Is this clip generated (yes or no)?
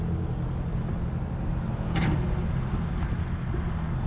no